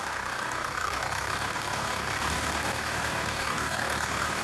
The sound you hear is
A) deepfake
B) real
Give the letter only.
A